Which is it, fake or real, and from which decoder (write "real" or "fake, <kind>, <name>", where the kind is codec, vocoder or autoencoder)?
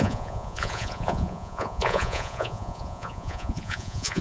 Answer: fake, vocoder, Vocos